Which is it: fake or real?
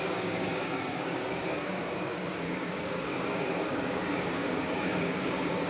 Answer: fake